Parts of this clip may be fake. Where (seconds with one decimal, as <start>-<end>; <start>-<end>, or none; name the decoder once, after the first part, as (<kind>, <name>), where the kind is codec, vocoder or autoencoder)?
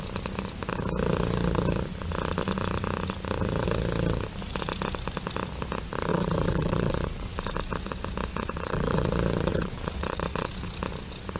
6.1-7.4 (vocoder, WaveNeXt); 8.3-9.1; 9.5-10.5